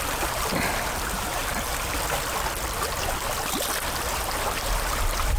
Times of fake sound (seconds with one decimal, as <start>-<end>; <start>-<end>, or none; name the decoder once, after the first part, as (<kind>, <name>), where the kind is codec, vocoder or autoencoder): 0.0-1.4 (vocoder, BigVGAN v2); 4.6-5.4

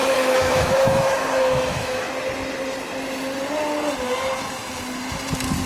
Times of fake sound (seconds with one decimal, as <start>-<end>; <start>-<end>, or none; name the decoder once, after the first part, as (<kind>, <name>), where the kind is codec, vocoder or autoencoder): 0.0-2.1 (autoencoder, DAC-VAE)

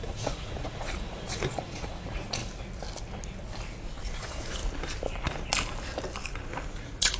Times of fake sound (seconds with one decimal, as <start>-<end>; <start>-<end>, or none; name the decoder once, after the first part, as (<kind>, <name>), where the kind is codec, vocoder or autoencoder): 0.0-2.4 (vocoder, Vocos); 4.0-4.6; 6.7-7.2

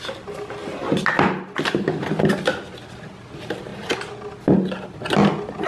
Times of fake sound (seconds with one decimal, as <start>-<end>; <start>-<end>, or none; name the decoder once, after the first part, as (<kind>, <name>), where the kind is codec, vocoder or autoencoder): none

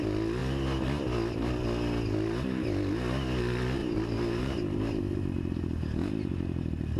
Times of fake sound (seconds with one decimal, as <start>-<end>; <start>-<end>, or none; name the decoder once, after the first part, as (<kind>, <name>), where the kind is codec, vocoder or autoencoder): 3.8-5.0 (vocoder, BigVGAN v2)

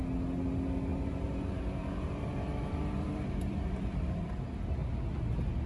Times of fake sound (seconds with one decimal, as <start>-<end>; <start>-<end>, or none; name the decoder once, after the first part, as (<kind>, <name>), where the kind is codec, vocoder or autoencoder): 0.9-4.3 (vocoder, BigVGAN v2)

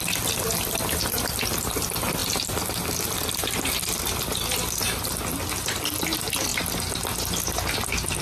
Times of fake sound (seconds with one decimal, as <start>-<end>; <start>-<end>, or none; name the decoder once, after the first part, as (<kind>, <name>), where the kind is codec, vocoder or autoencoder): 0.0-6.5 (vocoder, BigVGAN v2)